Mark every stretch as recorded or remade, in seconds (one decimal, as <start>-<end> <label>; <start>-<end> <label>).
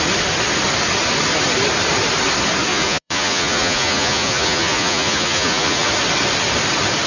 0.0-2.7 recorded; 2.7-5.9 remade; 5.9-7.1 recorded